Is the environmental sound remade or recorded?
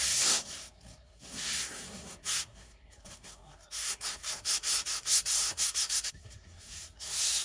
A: remade